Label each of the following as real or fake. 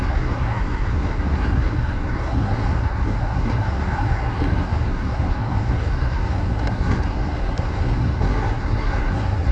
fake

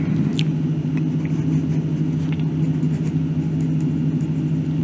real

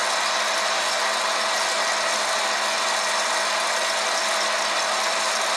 real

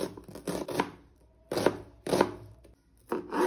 real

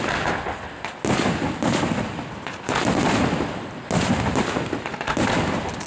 real